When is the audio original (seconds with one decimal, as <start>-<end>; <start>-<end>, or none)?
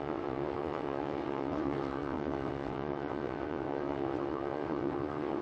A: none